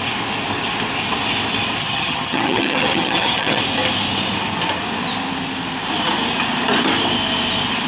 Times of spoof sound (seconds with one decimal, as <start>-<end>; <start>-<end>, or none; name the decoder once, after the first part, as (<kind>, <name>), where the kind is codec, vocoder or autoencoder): 1.8-3.6 (vocoder, HiFi-GAN)